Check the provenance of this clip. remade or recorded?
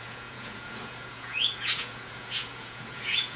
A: remade